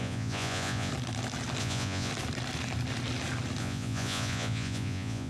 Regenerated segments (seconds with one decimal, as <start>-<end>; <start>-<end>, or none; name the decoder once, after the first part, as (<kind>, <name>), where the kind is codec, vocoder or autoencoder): 0.0-0.9 (vocoder, Vocos); 1.6-2.1; 3.6-5.3